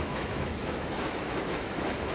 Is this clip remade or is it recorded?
remade